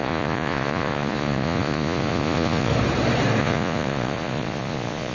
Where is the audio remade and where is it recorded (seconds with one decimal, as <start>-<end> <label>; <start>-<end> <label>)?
0.0-2.7 remade; 2.7-3.4 recorded; 3.4-5.1 remade